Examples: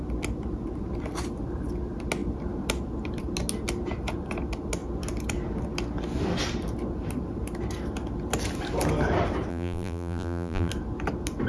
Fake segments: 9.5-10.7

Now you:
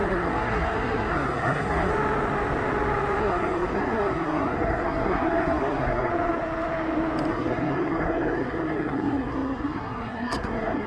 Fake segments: 0.0-1.9; 3.2-6.1; 7.3-10.9

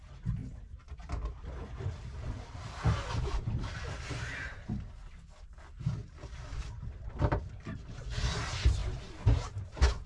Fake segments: 6.0-7.6

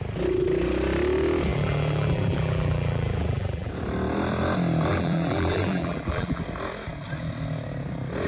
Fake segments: 1.5-3.7; 4.9-6.4